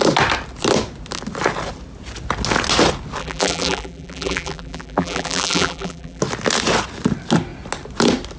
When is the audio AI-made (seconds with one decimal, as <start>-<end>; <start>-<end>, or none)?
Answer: 3.2-6.2